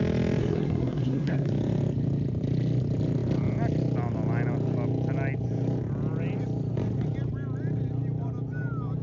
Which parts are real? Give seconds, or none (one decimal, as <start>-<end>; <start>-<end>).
0.0-0.4; 1.5-9.0